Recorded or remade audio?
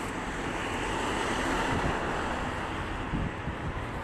recorded